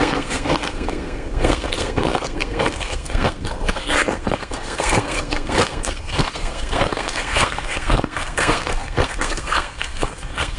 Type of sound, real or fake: fake